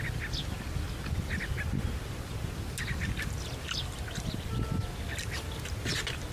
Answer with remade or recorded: recorded